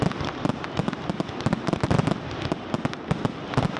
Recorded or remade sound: remade